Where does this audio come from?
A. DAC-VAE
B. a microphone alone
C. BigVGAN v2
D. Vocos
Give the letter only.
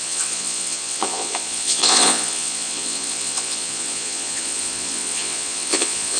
D